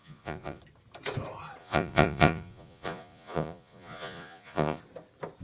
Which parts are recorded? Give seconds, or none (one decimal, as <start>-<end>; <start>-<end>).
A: 0.6-1.6; 4.8-5.4